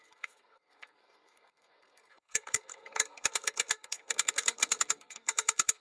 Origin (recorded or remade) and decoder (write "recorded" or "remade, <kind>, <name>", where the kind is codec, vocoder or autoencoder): remade, codec, SNAC